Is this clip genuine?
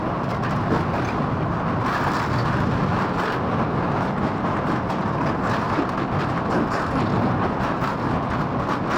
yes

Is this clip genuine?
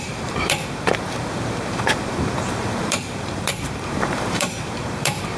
no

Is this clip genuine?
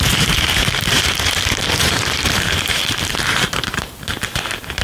no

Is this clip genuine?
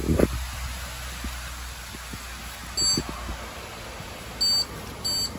yes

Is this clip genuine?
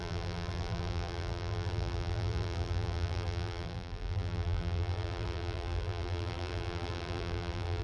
no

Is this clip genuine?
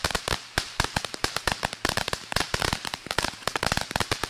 no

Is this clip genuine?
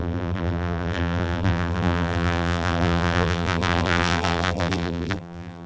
no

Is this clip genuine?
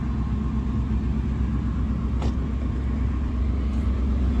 yes